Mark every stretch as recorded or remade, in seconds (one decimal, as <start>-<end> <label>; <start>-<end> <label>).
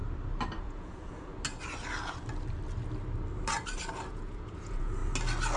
0.0-0.6 recorded; 0.6-1.3 remade; 1.3-4.1 recorded; 4.1-5.0 remade; 5.0-5.6 recorded